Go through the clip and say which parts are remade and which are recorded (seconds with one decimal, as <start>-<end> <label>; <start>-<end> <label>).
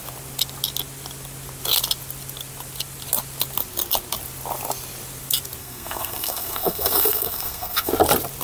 0.0-5.6 recorded; 5.6-7.9 remade; 7.9-8.4 recorded